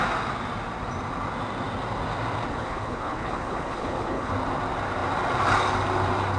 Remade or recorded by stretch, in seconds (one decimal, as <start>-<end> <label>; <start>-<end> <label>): 0.0-2.5 recorded; 2.5-4.3 remade; 4.3-6.4 recorded